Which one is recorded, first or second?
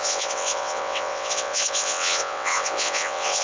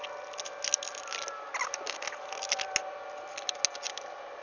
second